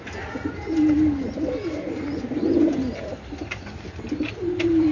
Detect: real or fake real